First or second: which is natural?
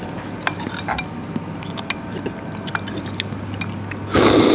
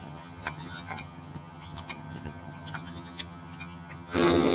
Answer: first